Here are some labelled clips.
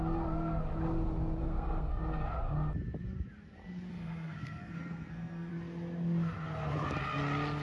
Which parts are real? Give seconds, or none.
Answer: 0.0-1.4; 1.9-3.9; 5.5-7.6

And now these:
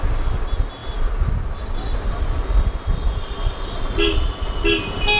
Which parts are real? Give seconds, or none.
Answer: 0.0-5.2

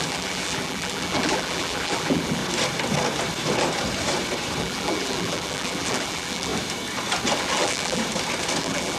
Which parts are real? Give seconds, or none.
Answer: 2.4-4.6; 6.5-7.4; 8.0-8.6

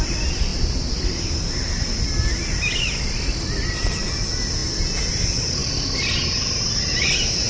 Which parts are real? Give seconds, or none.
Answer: 0.0-7.5

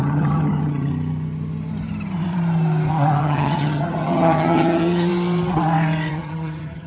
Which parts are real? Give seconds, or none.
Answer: 0.9-3.2; 5.1-6.1

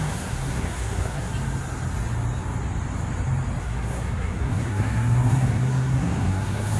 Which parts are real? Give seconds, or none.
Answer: 1.3-3.6

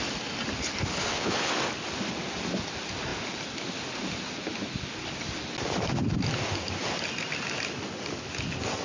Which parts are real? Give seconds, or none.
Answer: 0.0-0.9; 1.5-8.8